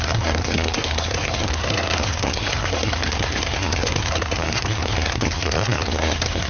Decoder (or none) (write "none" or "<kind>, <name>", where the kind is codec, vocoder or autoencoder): codec, SNAC